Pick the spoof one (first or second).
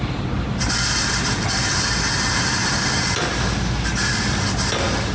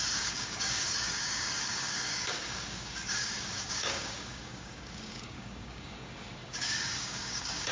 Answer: second